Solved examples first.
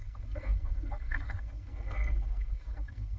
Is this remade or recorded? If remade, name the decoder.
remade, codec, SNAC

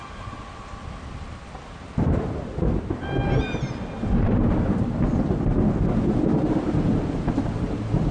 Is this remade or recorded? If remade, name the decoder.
remade, vocoder, BigVGAN v2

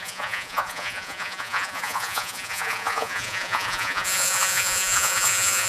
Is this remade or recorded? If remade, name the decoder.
remade, vocoder, Vocos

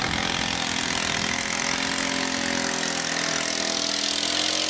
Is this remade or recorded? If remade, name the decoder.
recorded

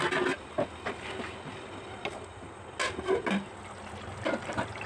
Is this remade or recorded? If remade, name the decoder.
recorded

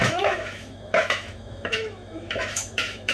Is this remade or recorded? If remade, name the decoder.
remade, autoencoder, DAC-VAE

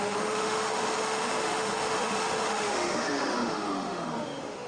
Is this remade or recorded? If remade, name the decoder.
remade, autoencoder, DAC-VAE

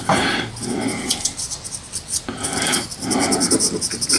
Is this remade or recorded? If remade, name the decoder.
recorded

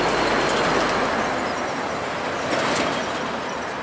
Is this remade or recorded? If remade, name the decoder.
recorded